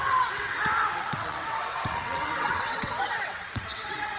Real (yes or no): no